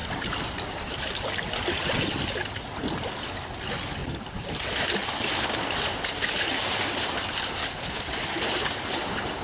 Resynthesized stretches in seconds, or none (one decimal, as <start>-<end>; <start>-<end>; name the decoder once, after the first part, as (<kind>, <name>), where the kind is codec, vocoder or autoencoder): none